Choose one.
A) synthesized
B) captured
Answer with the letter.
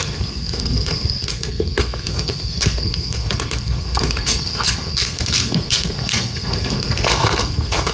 A